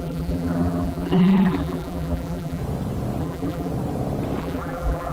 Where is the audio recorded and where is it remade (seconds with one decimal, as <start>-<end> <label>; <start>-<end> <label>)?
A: 0.0-2.6 remade; 2.6-3.2 recorded; 3.2-3.7 remade; 3.7-4.4 recorded; 4.4-5.1 remade